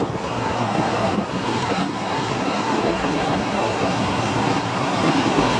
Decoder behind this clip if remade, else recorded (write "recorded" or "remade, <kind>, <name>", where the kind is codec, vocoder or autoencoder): remade, codec, SNAC